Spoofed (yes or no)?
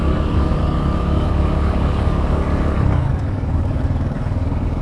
yes